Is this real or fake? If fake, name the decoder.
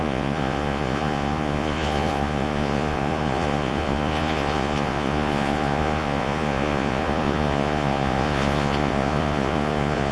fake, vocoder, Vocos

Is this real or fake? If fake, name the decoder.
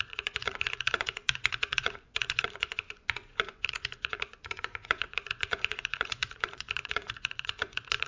fake, vocoder, Vocos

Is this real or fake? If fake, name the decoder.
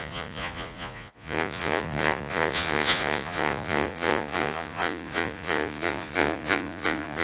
fake, vocoder, Vocos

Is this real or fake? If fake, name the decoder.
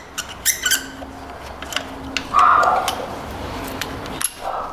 real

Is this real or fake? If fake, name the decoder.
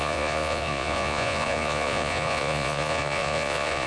fake, vocoder, Vocos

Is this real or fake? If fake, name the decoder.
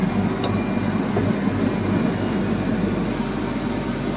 real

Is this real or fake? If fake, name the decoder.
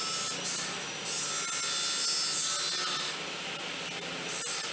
real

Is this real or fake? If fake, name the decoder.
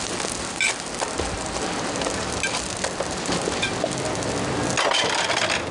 real